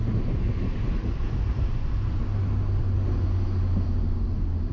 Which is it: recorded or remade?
recorded